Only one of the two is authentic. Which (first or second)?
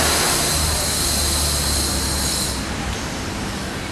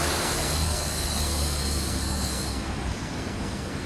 first